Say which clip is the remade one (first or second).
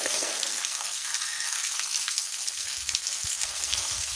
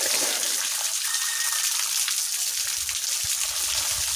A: first